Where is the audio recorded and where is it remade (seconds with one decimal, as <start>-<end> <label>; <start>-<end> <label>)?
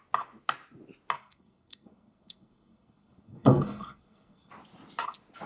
0.0-1.2 recorded; 1.2-4.5 remade; 4.5-5.5 recorded